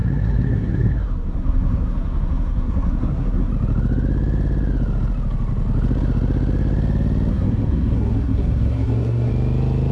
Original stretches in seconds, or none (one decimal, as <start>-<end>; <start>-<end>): 3.5-7.3; 9.3-9.9